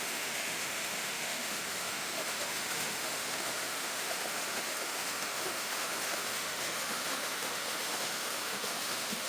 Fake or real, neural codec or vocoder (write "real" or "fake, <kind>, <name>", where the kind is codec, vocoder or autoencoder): fake, autoencoder, DAC-VAE